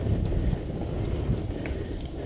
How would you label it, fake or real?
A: real